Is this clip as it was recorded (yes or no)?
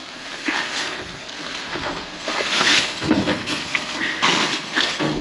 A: no